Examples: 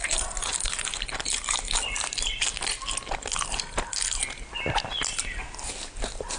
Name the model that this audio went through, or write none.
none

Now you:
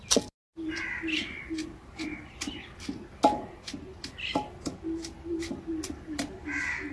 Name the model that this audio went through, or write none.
none